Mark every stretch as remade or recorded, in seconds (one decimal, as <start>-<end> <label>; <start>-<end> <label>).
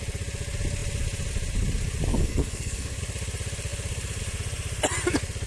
0.0-2.1 recorded; 2.1-3.0 remade; 3.0-5.5 recorded